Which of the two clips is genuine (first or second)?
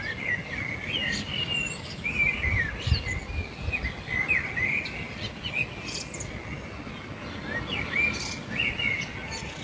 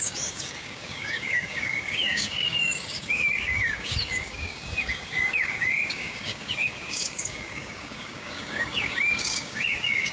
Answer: first